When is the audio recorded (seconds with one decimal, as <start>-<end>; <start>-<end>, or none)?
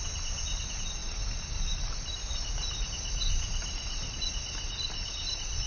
0.0-5.7